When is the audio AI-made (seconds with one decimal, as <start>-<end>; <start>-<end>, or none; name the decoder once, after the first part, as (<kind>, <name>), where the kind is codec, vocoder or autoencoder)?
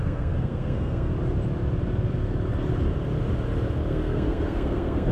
0.0-1.1 (codec, SNAC); 3.9-5.1